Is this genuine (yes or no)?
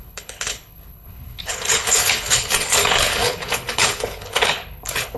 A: no